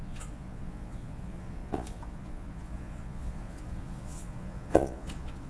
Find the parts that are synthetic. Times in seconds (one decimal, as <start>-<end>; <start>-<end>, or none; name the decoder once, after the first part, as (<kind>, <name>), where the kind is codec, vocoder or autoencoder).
0.0-5.5 (vocoder, Vocos)